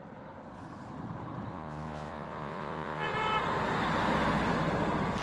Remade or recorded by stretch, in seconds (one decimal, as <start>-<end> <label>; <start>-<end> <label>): 0.0-1.5 recorded; 1.5-3.1 remade; 3.1-5.2 recorded